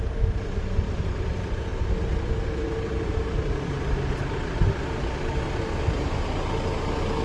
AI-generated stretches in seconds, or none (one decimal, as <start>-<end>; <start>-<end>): none